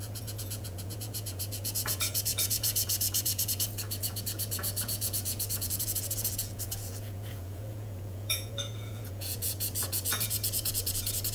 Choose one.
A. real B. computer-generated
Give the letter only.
B